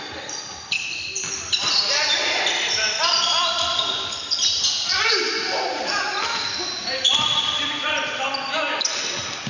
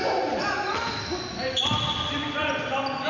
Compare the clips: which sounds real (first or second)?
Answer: second